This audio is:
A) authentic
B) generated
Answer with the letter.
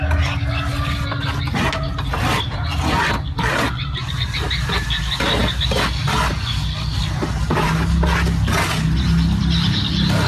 A